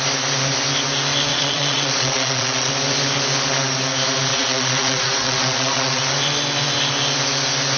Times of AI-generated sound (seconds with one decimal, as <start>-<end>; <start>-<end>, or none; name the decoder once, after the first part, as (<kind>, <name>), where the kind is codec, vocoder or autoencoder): 1.3-2.7 (vocoder, Vocos); 4.3-6.0